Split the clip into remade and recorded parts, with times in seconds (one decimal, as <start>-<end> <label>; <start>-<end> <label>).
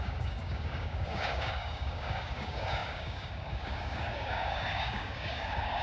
0.0-5.8 remade